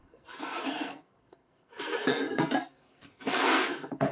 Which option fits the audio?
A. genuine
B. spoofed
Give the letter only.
B